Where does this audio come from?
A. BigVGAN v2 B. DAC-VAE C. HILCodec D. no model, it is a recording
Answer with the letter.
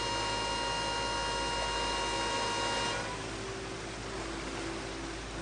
D